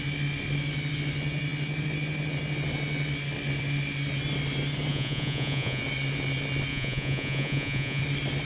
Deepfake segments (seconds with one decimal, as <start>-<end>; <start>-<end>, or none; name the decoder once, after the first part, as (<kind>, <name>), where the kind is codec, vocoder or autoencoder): 4.9-5.8 (vocoder, Vocos); 6.7-8.0